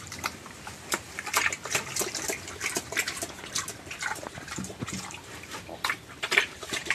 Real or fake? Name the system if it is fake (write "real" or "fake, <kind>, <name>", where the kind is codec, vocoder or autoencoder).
fake, vocoder, BigVGAN v2